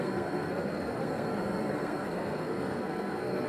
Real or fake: fake